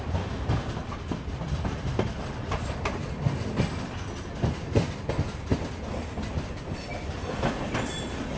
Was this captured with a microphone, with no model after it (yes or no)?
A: yes